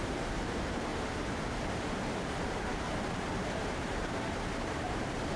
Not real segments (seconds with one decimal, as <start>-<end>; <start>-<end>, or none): 0.0-0.9; 2.2-5.4